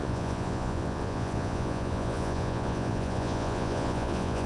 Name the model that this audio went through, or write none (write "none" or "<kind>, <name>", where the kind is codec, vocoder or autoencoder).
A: vocoder, Vocos